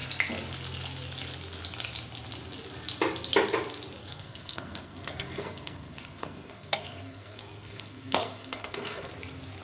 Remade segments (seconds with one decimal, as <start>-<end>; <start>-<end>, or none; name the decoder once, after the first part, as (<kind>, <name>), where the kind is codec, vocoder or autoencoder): 4.0-9.1 (codec, SNAC)